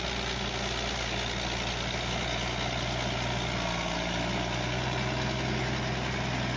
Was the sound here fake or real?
real